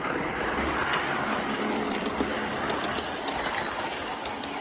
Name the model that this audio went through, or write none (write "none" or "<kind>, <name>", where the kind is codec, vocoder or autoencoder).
none